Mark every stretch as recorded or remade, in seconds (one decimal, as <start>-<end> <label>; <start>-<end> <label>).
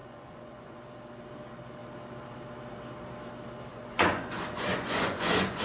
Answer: 0.0-0.8 remade; 0.8-3.7 recorded; 3.7-5.6 remade